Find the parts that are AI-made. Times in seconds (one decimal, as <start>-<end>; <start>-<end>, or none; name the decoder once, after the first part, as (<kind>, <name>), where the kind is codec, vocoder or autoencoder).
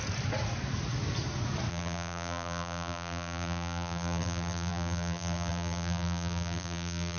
1.7-7.2 (vocoder, BigVGAN v2)